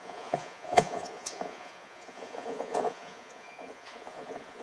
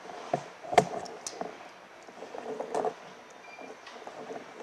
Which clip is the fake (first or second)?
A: first